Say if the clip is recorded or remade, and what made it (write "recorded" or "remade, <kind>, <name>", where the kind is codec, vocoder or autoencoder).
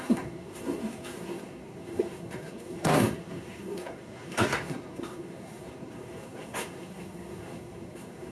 remade, codec, SNAC